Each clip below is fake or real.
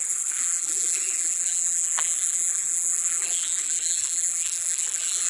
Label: fake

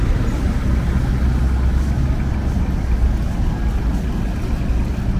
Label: real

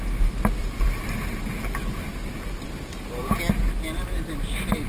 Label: real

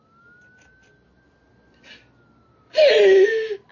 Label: real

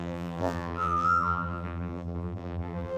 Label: fake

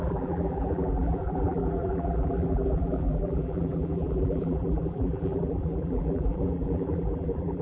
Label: fake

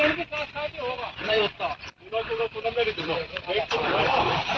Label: fake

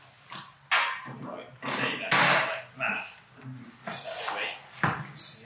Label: real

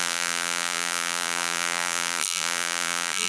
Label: fake